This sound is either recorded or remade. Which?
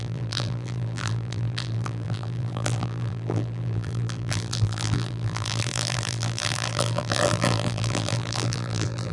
remade